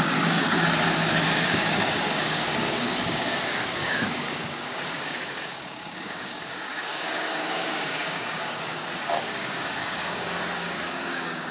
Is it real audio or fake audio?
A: fake